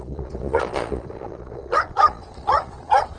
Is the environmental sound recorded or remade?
remade